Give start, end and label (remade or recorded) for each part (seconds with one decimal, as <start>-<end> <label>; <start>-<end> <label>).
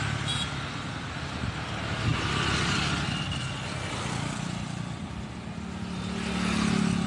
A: 0.0-7.1 recorded